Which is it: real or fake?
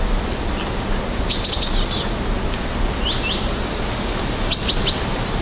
real